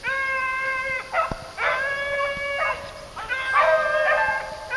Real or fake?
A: real